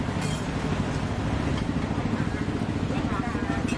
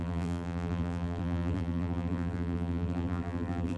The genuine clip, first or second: first